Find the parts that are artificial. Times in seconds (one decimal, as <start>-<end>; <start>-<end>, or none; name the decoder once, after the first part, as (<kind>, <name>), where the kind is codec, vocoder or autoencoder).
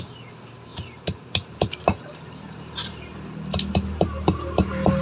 0.7-3.7 (vocoder, BigVGAN v2)